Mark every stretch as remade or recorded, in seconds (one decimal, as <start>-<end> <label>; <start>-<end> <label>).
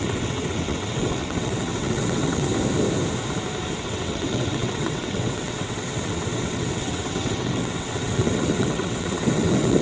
0.0-2.5 remade; 2.5-3.8 recorded; 3.8-9.8 remade